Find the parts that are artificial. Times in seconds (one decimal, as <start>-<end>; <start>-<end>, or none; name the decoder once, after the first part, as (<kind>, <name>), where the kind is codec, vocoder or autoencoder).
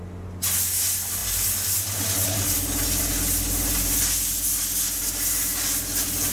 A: none